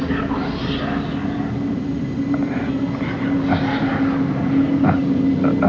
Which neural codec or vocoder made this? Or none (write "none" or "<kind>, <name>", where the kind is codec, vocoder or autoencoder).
none